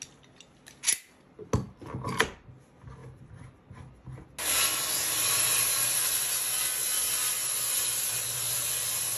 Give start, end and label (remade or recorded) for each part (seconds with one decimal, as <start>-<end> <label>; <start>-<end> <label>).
0.0-9.2 recorded